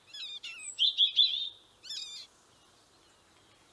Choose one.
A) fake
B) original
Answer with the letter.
B